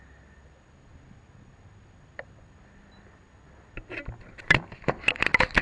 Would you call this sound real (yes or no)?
yes